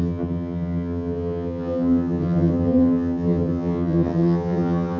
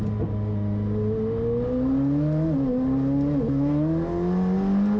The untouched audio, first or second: second